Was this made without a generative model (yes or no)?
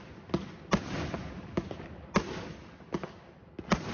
yes